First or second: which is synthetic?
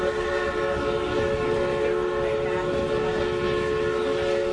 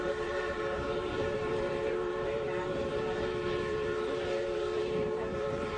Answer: second